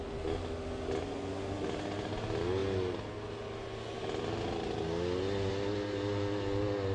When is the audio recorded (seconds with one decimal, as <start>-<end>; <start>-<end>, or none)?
0.0-6.9